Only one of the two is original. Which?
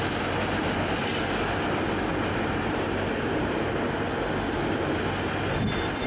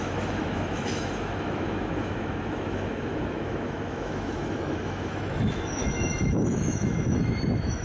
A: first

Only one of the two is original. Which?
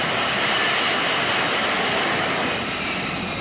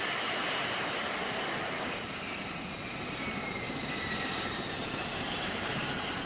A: first